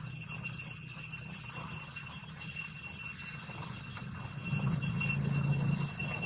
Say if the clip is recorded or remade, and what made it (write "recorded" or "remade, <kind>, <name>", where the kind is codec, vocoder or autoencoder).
recorded